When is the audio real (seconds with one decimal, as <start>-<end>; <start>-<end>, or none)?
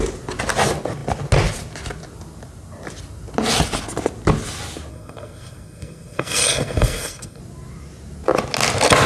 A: 0.0-4.9; 7.4-9.1